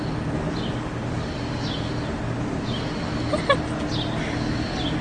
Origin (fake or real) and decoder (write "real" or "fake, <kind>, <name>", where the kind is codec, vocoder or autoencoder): real